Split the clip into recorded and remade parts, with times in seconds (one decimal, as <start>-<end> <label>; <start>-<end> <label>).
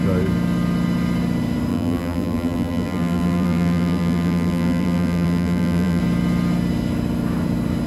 0.0-1.7 recorded; 1.7-6.0 remade; 6.0-7.9 recorded